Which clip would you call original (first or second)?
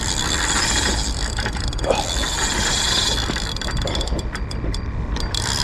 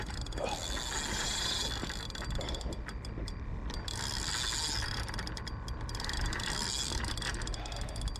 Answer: second